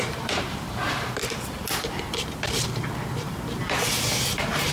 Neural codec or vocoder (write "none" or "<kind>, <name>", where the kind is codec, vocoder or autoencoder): vocoder, BigVGAN v2